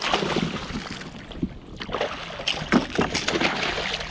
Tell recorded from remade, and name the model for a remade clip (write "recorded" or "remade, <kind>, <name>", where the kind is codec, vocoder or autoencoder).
recorded